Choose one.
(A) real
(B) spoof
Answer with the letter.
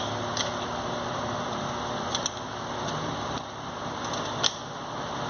A